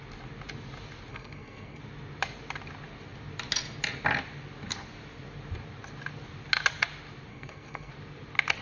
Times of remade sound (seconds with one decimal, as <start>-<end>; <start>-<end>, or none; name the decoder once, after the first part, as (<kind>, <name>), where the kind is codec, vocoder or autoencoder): 1.1-1.8 (codec, SNAC); 7.3-7.9